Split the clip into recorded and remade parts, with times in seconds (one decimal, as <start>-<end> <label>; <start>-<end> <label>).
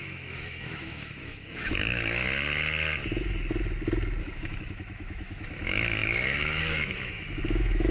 0.0-2.2 remade; 2.2-4.2 recorded; 4.2-7.9 remade